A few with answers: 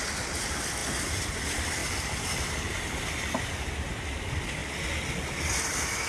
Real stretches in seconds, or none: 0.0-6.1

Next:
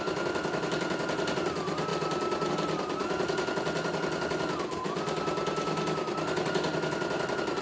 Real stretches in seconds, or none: 0.0-7.6